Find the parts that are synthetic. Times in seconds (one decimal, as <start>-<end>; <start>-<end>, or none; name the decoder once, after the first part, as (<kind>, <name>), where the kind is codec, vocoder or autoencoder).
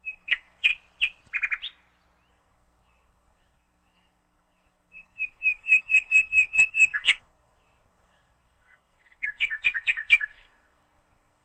0.0-0.7 (codec, SNAC); 2.3-11.4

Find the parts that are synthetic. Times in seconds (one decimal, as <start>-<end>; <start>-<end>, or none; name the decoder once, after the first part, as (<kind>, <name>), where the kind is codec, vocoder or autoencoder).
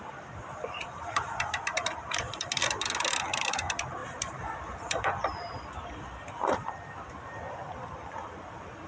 0.0-8.9 (vocoder, BigVGAN v2)